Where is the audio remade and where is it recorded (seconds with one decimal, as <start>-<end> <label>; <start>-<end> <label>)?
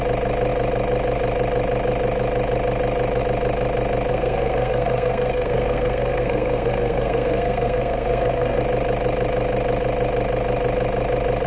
0.0-4.1 recorded; 4.1-8.6 remade; 8.6-11.5 recorded